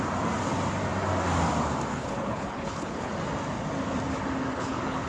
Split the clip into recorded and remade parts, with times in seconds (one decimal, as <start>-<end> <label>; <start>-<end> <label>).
0.0-1.9 recorded; 1.9-3.1 remade; 3.1-4.5 recorded; 4.5-5.1 remade